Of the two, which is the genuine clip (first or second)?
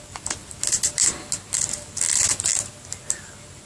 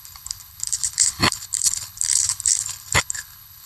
first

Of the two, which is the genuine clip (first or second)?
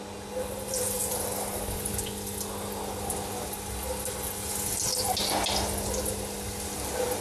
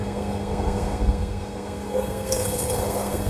first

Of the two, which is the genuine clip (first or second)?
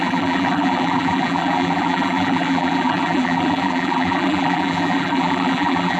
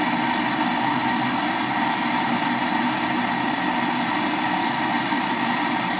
second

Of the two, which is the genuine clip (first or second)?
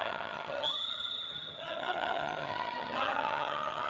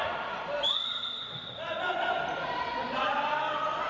second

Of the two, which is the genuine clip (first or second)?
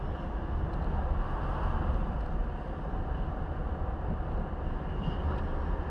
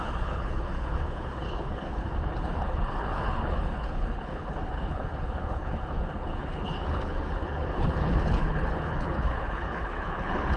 first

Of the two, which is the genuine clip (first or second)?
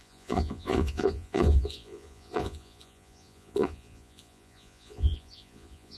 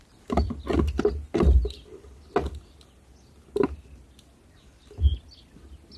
second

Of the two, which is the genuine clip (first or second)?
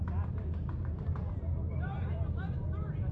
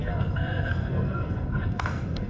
first